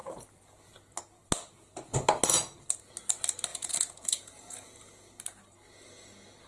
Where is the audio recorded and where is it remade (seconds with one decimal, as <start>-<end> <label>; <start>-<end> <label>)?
0.0-3.5 recorded; 3.5-5.1 remade; 5.1-6.5 recorded